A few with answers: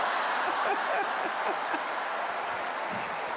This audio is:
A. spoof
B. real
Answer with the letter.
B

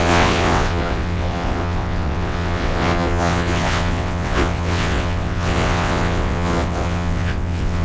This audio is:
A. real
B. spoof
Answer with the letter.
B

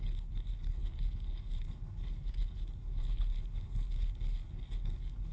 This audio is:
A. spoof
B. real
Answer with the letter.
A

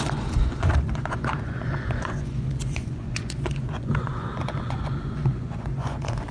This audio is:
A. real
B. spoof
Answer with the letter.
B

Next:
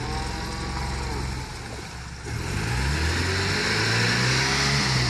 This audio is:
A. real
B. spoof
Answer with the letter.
A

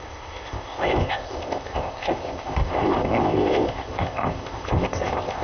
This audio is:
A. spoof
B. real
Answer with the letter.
A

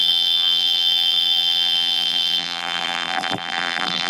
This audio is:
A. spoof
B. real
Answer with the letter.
A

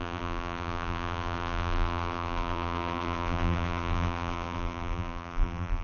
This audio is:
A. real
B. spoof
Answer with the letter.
B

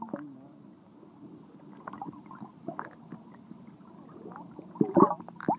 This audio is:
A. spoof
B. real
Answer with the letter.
B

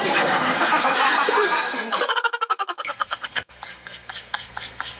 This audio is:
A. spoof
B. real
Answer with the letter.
A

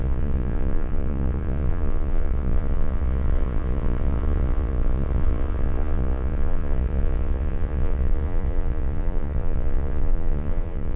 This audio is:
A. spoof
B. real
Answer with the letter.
A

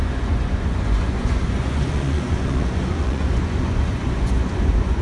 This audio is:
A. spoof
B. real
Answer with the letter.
A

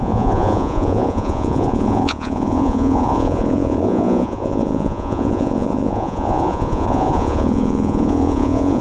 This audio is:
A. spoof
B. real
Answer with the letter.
A